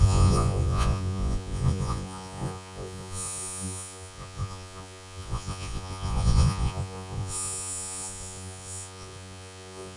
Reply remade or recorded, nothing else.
remade